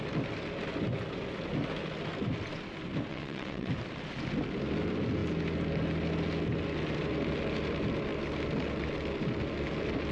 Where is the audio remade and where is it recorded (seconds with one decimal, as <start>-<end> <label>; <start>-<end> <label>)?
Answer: 0.0-3.1 recorded; 3.1-3.7 remade; 3.7-10.1 recorded